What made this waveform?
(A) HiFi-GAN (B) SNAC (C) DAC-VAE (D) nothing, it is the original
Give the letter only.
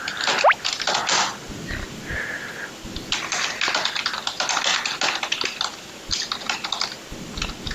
D